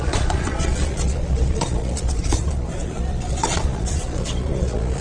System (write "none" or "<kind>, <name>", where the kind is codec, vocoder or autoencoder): vocoder, Vocos